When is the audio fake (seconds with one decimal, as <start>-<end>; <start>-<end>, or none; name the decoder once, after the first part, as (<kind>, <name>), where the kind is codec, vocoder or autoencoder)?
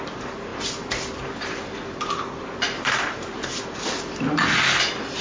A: 0.0-5.2 (vocoder, BigVGAN v2)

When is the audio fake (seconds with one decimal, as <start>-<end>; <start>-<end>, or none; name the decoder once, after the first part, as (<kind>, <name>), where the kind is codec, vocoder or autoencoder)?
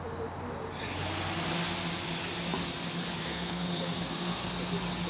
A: 3.2-4.5 (codec, SNAC)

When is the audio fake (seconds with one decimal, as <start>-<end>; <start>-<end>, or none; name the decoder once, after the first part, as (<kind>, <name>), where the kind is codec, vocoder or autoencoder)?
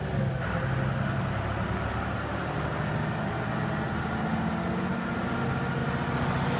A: none